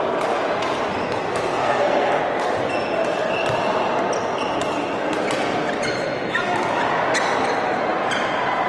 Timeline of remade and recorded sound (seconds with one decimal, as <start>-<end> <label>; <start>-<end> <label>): 0.0-1.3 recorded; 1.3-2.2 remade; 2.2-8.7 recorded